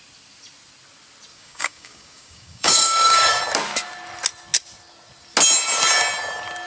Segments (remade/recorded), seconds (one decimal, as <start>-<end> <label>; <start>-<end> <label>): 0.0-1.3 recorded; 1.3-3.4 remade; 3.4-6.7 recorded